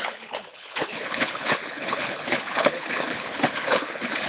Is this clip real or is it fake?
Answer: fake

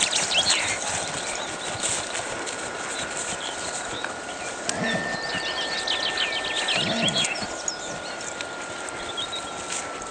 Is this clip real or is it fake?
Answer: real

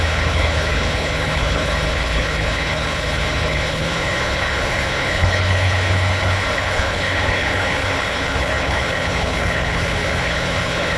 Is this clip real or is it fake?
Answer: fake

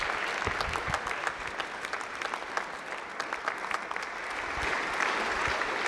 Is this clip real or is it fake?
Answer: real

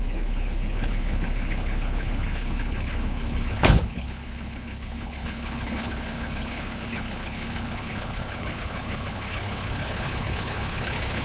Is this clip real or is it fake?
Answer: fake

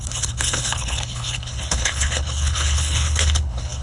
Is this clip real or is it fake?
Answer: fake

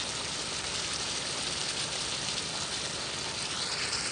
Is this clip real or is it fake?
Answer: real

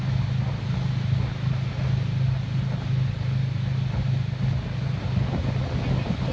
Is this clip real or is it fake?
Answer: real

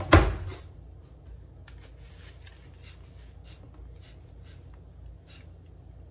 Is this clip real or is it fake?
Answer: real